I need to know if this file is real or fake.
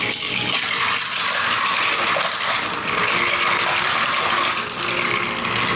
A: real